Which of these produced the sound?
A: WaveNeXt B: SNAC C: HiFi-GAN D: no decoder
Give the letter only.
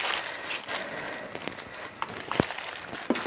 D